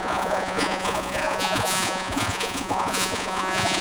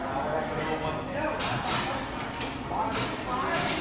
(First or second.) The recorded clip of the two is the second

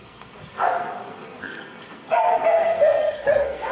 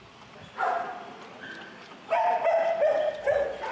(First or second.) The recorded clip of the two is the second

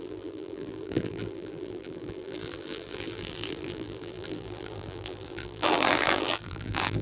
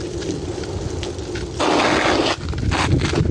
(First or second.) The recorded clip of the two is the second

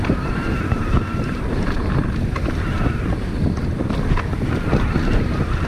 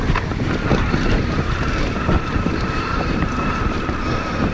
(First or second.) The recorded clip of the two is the first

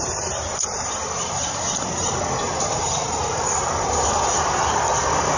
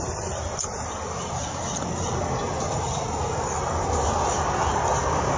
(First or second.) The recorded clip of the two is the second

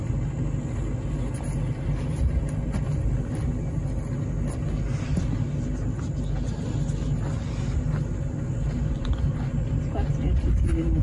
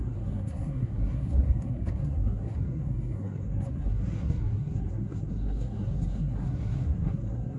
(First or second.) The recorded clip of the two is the first